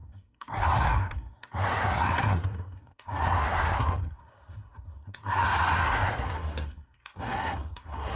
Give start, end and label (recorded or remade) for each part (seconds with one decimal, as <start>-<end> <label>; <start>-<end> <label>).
0.0-8.2 remade